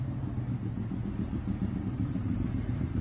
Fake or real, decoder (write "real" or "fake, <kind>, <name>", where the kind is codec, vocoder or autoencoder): real